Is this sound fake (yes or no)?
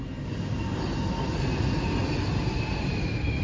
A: no